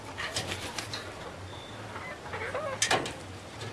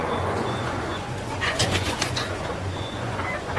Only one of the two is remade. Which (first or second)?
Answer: second